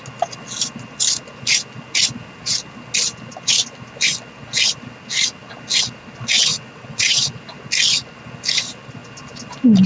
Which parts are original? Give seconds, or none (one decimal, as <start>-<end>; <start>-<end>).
0.0-6.5; 7.4-9.9